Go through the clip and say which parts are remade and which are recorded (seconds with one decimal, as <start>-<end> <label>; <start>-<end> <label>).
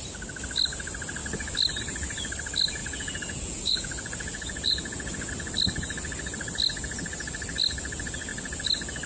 0.0-2.8 recorded; 2.8-5.3 remade; 5.3-9.1 recorded